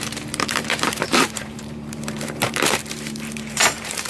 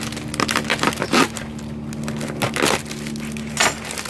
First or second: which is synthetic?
first